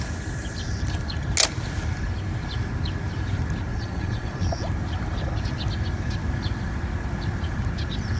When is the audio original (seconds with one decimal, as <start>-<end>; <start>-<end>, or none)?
0.0-3.7; 4.6-8.2